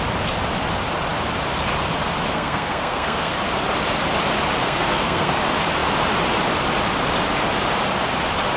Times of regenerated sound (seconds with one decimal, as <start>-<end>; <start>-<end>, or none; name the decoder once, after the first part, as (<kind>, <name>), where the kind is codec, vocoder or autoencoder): 2.3-3.3 (codec, SNAC); 4.6-5.3